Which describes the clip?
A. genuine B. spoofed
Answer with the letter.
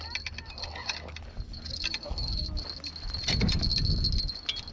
A